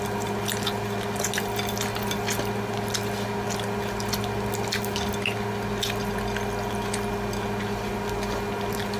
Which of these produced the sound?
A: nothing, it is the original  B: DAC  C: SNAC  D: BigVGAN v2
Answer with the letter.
A